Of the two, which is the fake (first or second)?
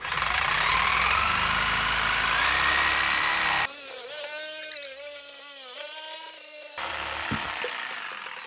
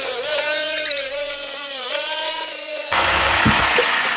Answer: second